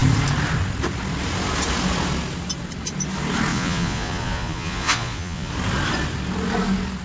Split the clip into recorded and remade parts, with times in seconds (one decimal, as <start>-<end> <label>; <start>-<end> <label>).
0.0-3.5 recorded; 3.5-5.5 remade; 5.5-7.0 recorded